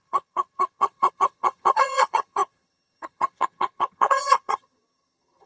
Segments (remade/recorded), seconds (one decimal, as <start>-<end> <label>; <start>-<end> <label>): 0.0-5.5 remade